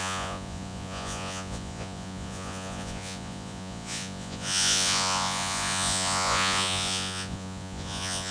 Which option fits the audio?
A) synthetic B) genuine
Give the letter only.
A